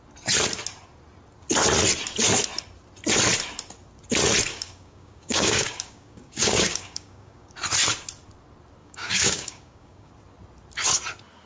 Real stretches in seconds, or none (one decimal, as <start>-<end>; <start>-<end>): 0.0-4.5; 7.5-8.8; 10.1-11.5